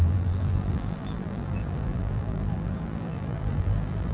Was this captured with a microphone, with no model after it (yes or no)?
no